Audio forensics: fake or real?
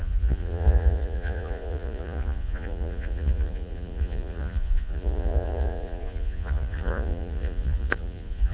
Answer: fake